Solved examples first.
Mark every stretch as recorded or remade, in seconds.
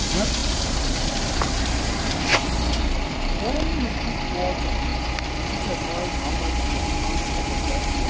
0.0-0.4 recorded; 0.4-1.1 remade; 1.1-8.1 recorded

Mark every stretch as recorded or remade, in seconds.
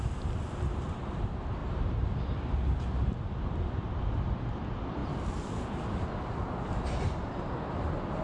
0.0-1.6 recorded; 1.6-4.0 remade; 4.0-8.2 recorded